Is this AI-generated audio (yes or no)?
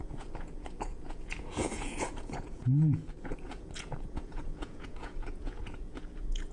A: yes